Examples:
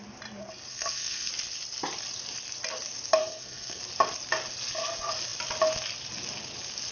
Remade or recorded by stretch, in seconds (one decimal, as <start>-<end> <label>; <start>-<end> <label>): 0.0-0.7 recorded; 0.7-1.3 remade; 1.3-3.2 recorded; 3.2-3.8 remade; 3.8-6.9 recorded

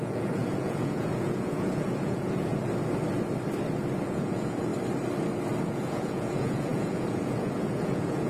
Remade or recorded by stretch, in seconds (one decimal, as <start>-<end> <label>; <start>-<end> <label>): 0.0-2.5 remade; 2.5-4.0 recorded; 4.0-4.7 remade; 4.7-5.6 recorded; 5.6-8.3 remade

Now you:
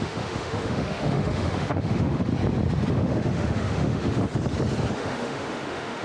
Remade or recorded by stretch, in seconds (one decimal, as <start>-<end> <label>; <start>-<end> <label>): 0.0-2.3 remade; 2.3-2.9 recorded; 2.9-4.3 remade; 4.3-4.9 recorded; 4.9-6.0 remade